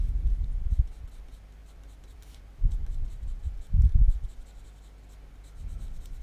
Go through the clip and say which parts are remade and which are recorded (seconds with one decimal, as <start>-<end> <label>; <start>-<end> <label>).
0.0-1.6 recorded; 1.6-3.4 remade; 3.4-6.2 recorded